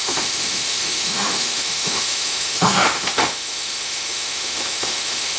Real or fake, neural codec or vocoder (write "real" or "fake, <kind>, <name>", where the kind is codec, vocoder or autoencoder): fake, autoencoder, DAC-VAE